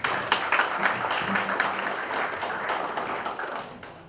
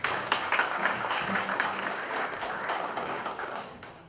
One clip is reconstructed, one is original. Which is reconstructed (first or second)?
second